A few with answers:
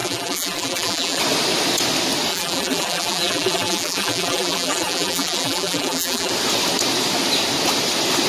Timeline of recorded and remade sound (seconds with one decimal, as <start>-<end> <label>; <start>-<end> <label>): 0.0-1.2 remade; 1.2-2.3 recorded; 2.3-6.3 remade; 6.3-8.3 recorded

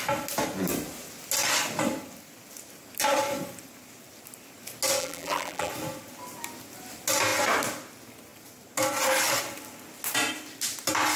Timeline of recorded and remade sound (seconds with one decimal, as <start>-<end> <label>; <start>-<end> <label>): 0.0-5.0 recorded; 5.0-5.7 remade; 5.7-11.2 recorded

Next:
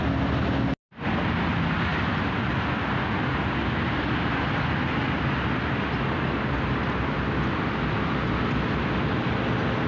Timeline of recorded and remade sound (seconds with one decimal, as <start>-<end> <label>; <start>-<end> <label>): 0.0-1.9 recorded; 1.9-2.5 remade; 2.5-9.9 recorded

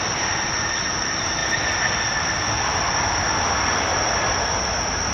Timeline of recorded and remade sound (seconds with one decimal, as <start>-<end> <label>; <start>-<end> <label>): 0.0-5.1 recorded

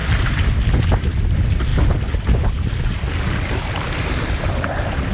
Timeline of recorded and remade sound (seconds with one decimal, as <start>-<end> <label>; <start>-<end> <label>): 0.0-0.7 remade; 0.7-5.1 recorded

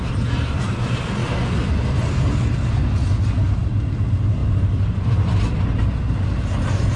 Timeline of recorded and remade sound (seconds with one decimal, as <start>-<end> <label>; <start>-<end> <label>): 0.0-4.4 recorded; 4.4-5.6 remade; 5.6-7.0 recorded

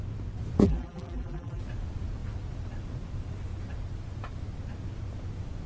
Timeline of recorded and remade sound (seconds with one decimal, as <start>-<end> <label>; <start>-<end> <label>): 0.0-0.6 recorded; 0.6-1.6 remade; 1.6-5.7 recorded

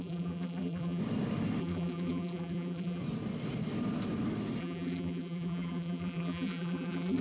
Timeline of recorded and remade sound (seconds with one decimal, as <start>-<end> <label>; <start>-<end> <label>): 0.0-1.0 remade; 1.0-1.6 recorded; 1.6-3.0 remade; 3.0-4.6 recorded; 4.6-7.2 remade